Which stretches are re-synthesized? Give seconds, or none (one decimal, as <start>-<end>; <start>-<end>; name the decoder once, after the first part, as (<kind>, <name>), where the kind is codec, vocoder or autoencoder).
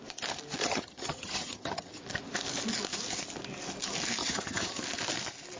0.6-2.0 (vocoder, HiFi-GAN); 4.2-4.8